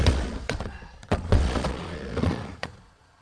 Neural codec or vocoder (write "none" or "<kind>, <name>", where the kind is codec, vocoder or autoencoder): vocoder, Vocos